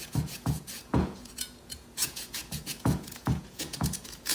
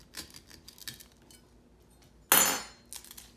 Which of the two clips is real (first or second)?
second